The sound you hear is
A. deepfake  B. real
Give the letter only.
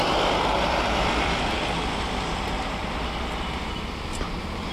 A